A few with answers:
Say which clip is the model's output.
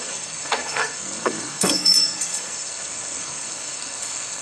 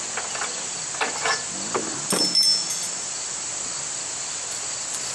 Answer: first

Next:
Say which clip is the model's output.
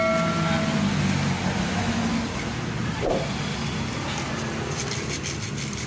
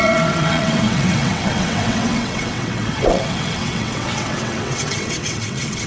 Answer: second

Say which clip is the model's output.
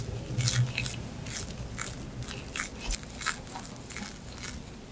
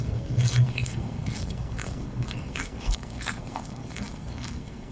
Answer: second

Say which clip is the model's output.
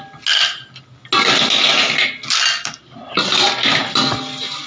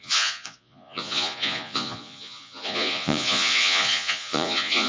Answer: second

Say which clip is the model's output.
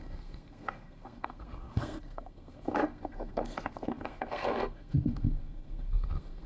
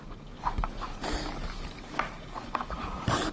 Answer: first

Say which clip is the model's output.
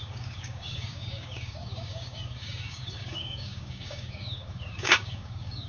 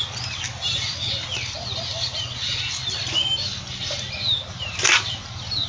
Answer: first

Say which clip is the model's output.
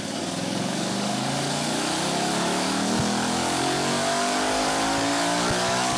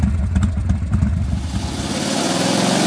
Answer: first